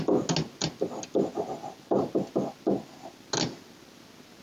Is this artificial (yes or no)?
no